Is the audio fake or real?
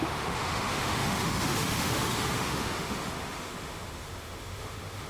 fake